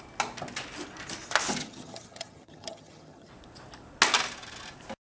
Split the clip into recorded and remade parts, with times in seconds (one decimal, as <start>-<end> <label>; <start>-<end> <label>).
0.0-1.6 recorded; 1.6-3.3 remade; 3.3-5.0 recorded